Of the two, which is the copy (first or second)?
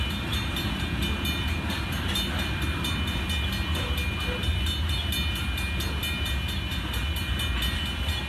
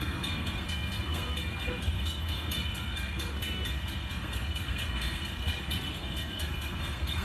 second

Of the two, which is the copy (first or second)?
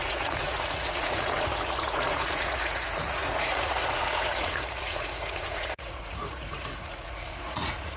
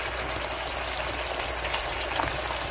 first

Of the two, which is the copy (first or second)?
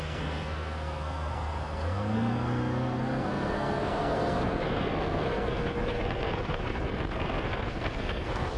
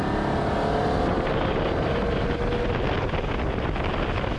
first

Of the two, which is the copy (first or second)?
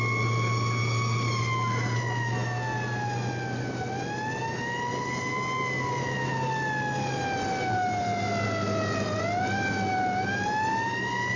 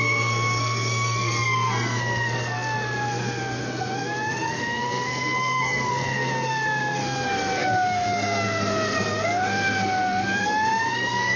second